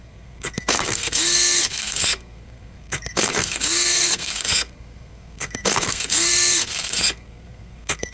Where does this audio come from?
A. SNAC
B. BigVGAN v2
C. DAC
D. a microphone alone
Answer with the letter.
A